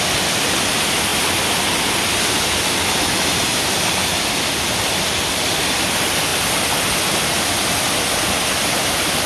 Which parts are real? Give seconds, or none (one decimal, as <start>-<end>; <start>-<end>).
0.0-9.3